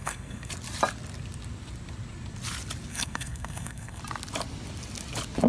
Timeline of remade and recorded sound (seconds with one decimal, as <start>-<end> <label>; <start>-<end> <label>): 0.0-0.5 remade; 0.5-2.9 recorded; 2.9-4.0 remade; 4.0-5.5 recorded